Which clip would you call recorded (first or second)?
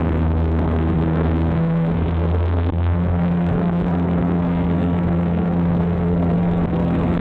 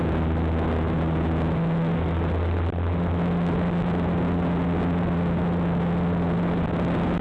second